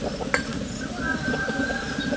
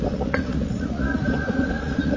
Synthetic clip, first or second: second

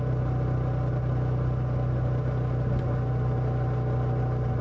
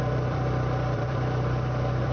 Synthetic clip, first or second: second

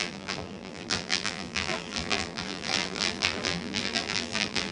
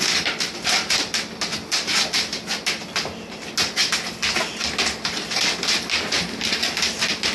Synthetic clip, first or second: first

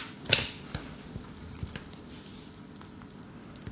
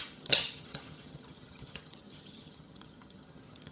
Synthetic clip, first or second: second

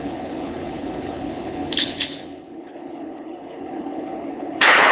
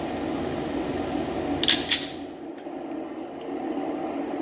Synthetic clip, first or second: first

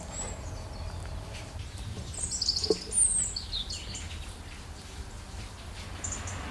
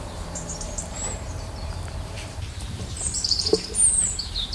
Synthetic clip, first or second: second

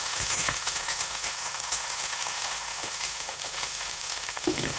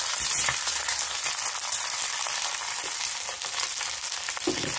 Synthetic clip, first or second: first